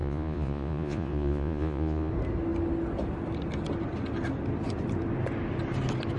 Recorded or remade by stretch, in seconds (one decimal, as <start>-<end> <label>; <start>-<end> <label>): 0.0-2.1 remade; 2.1-6.2 recorded